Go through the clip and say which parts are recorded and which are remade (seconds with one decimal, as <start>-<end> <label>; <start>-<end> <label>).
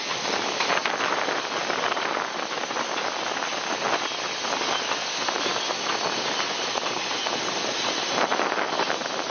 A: 0.0-9.3 recorded